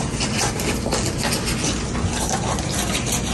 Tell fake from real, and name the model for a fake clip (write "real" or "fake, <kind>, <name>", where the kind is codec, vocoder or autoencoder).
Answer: real